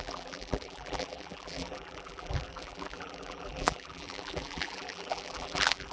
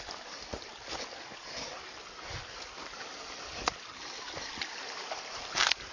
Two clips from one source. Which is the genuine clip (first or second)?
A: second